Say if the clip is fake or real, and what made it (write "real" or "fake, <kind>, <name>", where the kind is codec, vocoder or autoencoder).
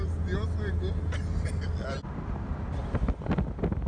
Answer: real